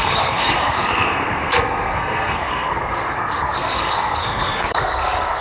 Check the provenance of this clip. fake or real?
fake